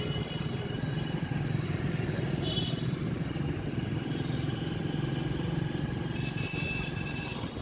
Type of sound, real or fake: fake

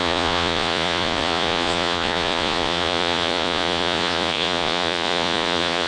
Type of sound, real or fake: fake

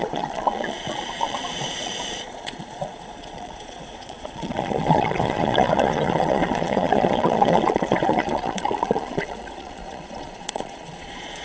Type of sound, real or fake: fake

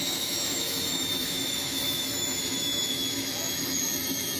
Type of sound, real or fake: fake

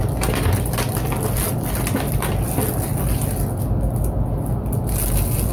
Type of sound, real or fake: real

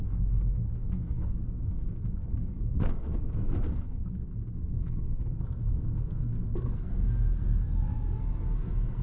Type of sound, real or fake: fake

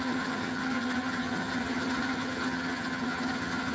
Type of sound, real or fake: fake